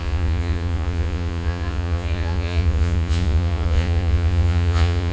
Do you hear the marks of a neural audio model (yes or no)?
yes